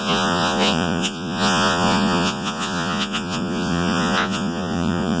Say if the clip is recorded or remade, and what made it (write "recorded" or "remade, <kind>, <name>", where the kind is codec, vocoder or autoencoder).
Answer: remade, vocoder, Vocos